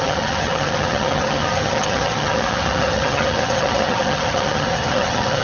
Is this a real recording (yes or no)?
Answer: no